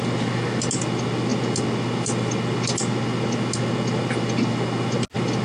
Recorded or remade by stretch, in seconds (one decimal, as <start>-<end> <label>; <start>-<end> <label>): 0.0-5.4 recorded